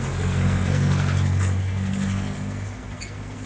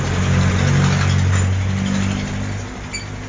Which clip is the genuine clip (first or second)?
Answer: second